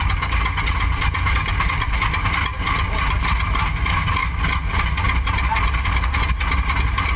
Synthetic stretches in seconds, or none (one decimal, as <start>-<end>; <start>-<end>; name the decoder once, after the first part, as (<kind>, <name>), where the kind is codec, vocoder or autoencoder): 2.5-3.2 (vocoder, BigVGAN v2)

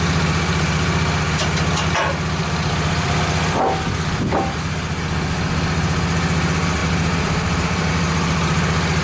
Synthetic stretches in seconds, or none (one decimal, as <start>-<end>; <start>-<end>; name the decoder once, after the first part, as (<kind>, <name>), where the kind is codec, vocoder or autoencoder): 2.4-3.2 (vocoder, BigVGAN v2); 6.8-7.9

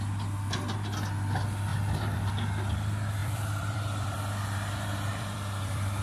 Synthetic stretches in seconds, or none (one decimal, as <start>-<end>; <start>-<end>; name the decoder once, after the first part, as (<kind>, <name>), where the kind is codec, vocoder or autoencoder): 1.7-2.3 (vocoder, BigVGAN v2); 3.2-6.0

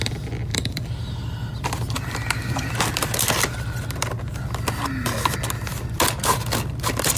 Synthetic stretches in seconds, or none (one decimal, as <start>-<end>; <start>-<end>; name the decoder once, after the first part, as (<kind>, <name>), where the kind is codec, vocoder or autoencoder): 0.5-1.2 (vocoder, BigVGAN v2)